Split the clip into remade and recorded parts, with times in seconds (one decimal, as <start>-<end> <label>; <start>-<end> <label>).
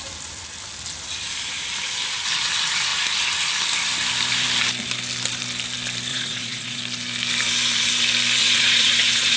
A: 0.0-6.1 recorded; 6.1-6.8 remade; 6.8-8.4 recorded; 8.4-9.4 remade